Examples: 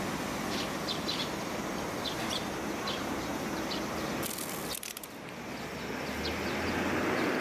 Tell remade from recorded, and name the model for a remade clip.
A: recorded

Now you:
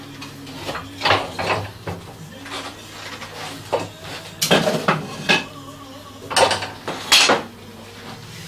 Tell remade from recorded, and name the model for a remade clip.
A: recorded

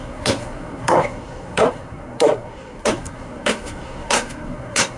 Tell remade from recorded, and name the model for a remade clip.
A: remade, codec, SNAC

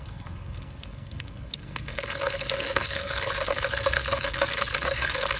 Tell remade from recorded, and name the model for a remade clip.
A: remade, codec, SNAC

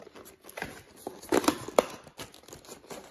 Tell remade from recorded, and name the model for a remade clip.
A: recorded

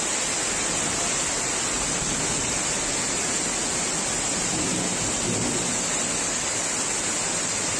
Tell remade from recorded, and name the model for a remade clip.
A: recorded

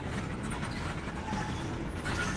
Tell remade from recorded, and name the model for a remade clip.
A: recorded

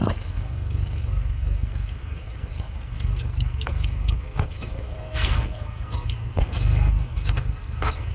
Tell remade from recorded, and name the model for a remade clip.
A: remade, codec, SNAC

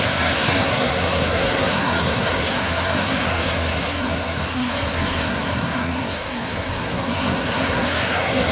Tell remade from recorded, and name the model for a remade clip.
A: remade, codec, SNAC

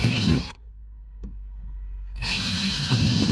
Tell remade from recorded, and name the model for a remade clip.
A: remade, codec, SNAC